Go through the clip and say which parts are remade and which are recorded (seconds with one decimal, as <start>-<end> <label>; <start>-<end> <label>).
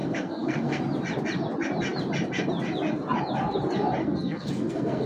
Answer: 0.0-0.8 remade; 0.8-4.0 recorded; 4.0-5.1 remade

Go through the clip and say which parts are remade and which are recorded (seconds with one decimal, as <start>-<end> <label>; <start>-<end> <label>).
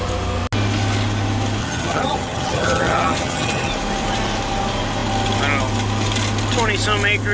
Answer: 0.0-1.6 recorded; 1.6-3.7 remade; 3.7-7.3 recorded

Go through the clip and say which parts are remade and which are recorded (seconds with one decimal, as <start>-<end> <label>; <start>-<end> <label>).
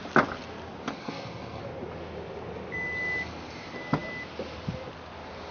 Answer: 0.0-1.0 recorded; 1.0-1.6 remade; 1.6-5.5 recorded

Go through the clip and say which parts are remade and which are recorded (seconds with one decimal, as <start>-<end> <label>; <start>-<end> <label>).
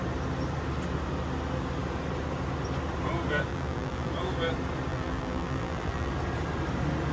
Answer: 0.0-3.5 recorded; 3.5-4.1 remade; 4.1-4.9 recorded; 4.9-6.1 remade; 6.1-7.1 recorded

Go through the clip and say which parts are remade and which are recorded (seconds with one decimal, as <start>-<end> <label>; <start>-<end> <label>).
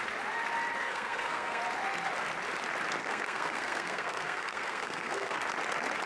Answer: 0.0-0.8 recorded; 0.8-1.6 remade; 1.6-3.0 recorded; 3.0-5.4 remade; 5.4-6.1 recorded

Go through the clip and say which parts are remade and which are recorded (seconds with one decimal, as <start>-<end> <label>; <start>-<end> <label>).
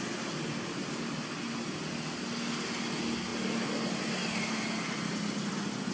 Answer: 0.0-5.9 recorded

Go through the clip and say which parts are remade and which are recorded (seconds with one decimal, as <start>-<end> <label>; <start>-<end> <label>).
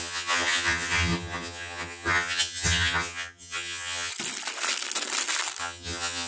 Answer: 0.0-4.1 remade; 4.1-5.6 recorded; 5.6-6.3 remade